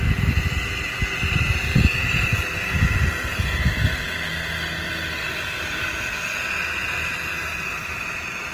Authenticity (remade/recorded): recorded